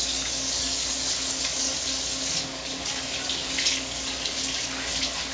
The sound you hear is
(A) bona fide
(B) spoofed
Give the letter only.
B